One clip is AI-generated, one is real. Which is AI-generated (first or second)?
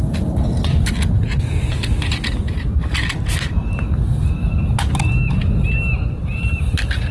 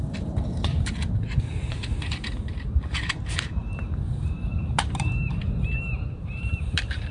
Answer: second